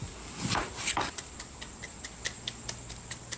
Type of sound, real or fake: real